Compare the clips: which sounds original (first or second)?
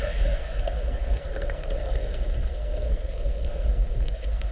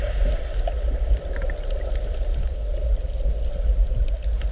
second